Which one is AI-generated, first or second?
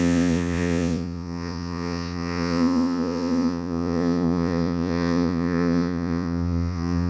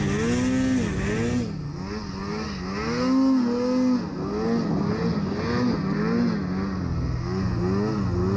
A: first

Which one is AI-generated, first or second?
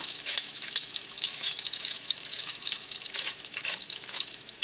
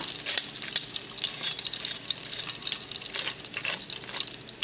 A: first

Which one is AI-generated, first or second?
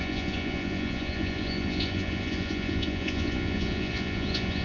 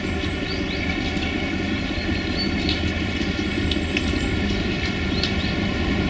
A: first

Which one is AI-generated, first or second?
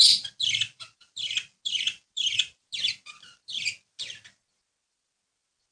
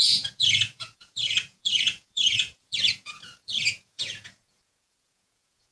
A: second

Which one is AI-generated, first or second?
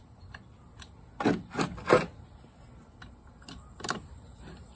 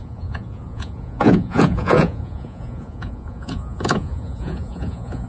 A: second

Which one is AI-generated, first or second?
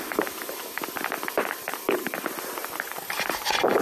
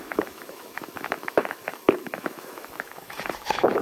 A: second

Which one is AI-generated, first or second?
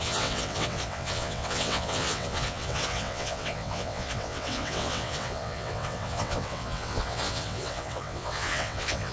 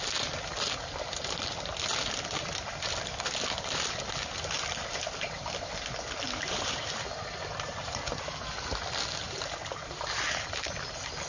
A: first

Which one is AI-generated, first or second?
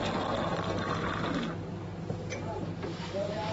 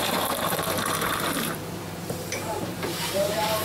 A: second